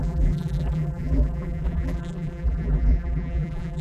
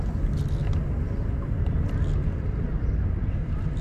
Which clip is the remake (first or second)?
first